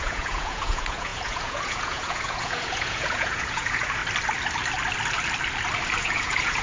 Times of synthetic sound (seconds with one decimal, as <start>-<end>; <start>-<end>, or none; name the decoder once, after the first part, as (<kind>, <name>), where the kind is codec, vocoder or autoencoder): 0.0-4.0 (vocoder, Vocos); 6.0-6.6